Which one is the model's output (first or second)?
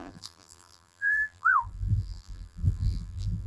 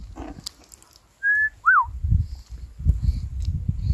first